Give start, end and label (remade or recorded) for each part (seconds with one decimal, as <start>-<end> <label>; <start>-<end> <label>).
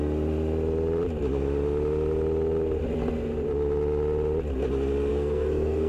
0.0-5.1 recorded; 5.1-5.9 remade